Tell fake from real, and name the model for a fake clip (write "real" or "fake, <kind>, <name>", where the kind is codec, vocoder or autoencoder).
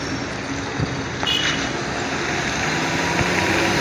real